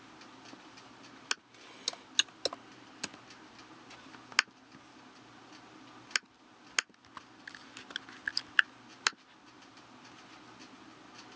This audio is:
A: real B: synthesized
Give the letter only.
A